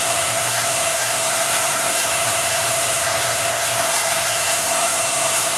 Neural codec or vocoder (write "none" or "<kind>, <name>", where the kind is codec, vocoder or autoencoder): codec, SNAC